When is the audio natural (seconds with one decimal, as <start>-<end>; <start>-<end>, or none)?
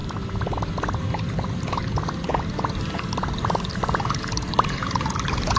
2.3-4.5